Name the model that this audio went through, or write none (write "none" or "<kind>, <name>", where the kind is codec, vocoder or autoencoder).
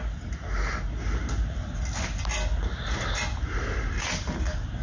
none